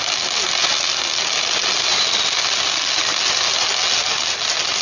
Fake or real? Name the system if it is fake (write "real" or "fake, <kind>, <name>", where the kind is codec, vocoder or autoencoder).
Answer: real